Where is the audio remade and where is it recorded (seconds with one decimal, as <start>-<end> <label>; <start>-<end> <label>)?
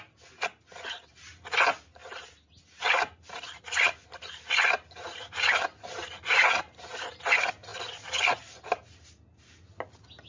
0.0-10.3 recorded